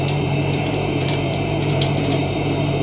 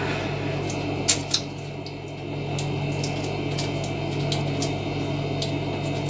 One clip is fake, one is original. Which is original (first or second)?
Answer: second